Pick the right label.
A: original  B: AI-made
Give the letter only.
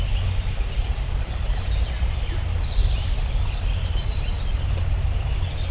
A